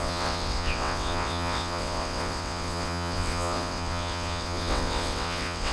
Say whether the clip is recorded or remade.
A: remade